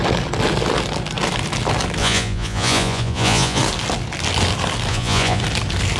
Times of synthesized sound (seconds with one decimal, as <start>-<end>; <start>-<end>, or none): 2.0-3.6; 4.9-5.4